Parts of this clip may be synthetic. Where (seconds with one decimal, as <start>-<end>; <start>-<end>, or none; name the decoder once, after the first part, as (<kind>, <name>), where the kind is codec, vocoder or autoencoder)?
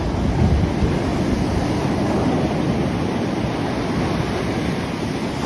none